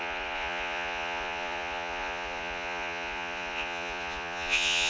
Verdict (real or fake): fake